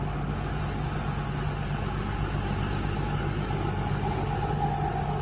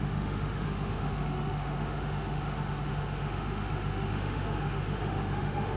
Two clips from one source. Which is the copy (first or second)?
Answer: second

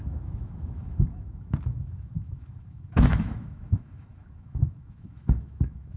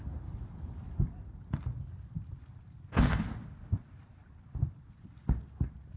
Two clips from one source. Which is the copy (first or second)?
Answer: first